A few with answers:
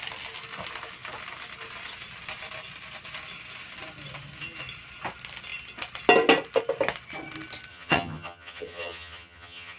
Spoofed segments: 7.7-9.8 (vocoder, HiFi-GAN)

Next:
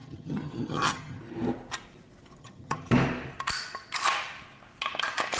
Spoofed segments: 0.0-1.2 (vocoder, HiFi-GAN); 2.4-2.9

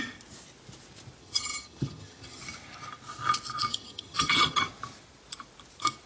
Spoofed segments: 1.2-2.4 (vocoder, HiFi-GAN); 3.7-4.7

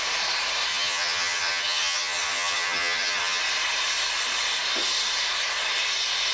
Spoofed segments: 0.7-3.4 (vocoder, HiFi-GAN)

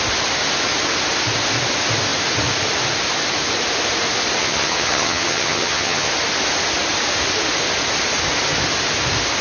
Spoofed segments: 4.4-6.1 (vocoder, HiFi-GAN)